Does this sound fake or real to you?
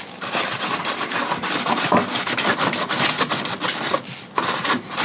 real